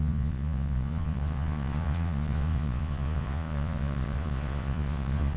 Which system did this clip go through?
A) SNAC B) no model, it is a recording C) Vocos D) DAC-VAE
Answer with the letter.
C